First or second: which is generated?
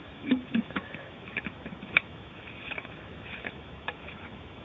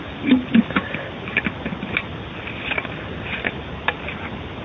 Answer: first